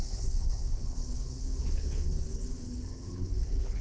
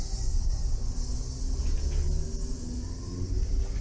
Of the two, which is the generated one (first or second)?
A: first